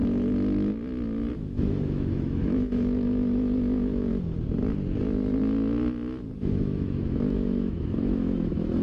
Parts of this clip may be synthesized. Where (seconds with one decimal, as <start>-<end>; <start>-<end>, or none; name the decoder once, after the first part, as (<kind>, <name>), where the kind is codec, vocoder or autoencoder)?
1.3-4.1 (autoencoder, DAC-VAE); 6.4-8.8